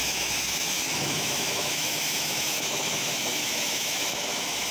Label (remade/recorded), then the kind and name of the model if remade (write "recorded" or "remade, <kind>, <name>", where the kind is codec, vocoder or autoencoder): remade, autoencoder, DAC-VAE